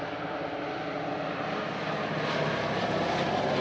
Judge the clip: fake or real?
real